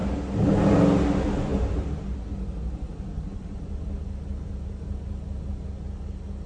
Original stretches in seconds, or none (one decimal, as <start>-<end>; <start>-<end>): 0.0-6.5